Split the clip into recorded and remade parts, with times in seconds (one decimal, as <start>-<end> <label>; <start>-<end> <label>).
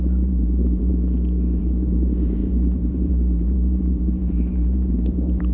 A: 0.0-0.9 remade; 0.9-1.6 recorded; 1.6-5.5 remade